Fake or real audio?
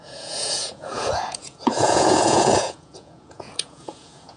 fake